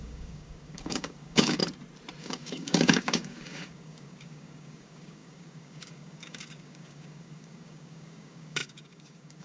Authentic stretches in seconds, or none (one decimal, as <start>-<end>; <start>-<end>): 1.6-2.2